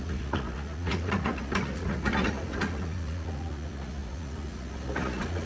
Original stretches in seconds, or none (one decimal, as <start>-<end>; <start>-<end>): none